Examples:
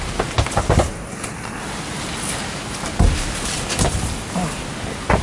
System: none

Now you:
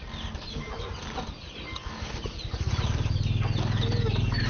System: none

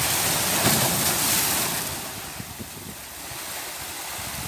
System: none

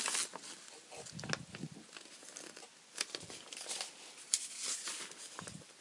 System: none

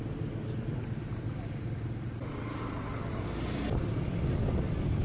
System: none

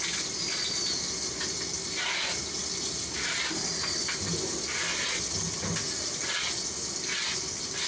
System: none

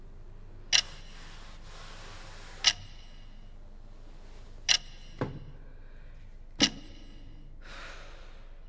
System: none